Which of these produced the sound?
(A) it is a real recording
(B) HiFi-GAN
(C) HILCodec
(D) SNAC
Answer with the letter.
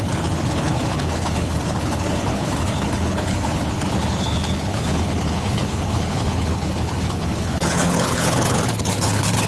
C